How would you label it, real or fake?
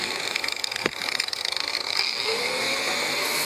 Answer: fake